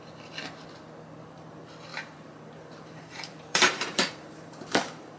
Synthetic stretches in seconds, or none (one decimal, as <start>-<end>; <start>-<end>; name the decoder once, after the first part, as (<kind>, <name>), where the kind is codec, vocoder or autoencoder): 1.9-5.2 (vocoder, BigVGAN v2)